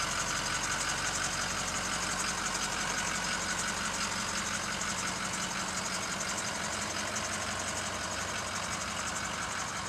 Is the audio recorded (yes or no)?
yes